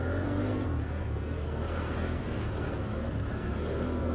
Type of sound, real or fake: fake